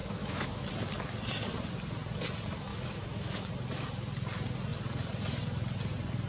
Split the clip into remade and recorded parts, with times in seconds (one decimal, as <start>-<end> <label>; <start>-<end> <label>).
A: 0.0-0.7 remade; 0.7-2.7 recorded; 2.7-3.5 remade; 3.5-6.3 recorded